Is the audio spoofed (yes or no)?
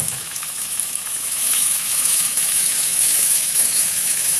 yes